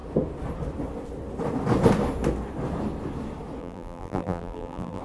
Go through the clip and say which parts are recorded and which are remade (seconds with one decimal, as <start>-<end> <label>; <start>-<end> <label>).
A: 0.0-3.6 recorded; 3.6-5.0 remade